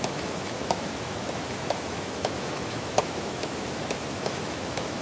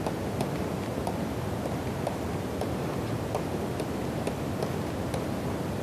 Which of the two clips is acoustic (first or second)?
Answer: second